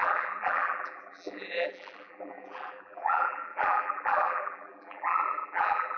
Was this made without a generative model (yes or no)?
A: no